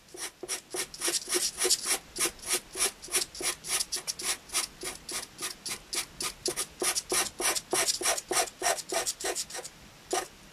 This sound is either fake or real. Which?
real